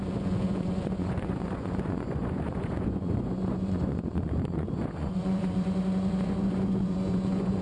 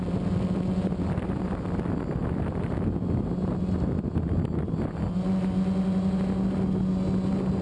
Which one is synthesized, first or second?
first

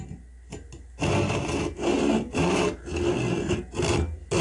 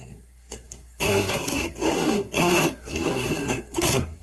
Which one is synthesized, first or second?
second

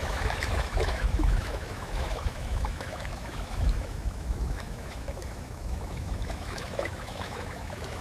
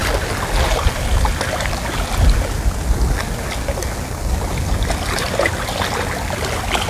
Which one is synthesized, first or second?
first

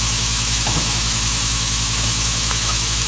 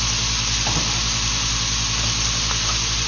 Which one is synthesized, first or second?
first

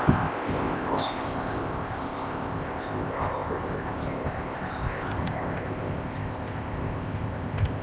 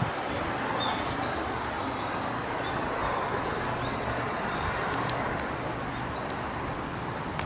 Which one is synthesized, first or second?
first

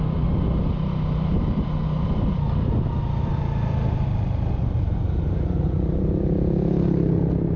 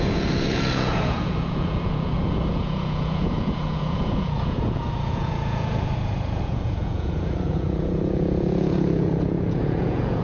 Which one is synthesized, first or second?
second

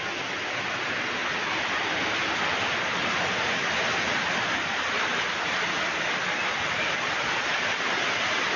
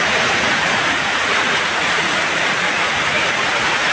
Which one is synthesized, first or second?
second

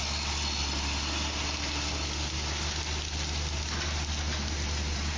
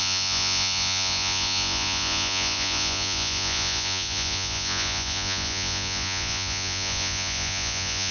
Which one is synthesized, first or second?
second